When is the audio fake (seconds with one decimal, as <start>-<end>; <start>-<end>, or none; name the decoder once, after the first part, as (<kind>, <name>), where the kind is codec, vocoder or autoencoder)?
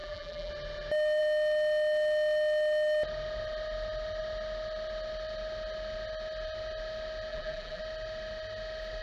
0.0-0.5 (vocoder, BigVGAN v2); 7.3-7.8